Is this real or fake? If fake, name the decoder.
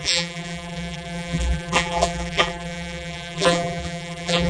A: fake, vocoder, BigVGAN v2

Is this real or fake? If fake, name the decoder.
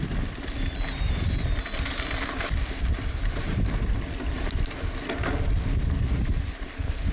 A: fake, vocoder, BigVGAN v2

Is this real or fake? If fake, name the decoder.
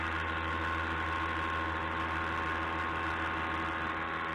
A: real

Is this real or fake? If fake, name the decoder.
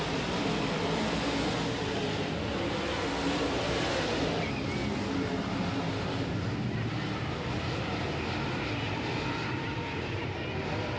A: real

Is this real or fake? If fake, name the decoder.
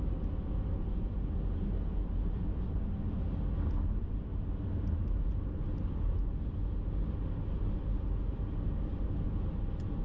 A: real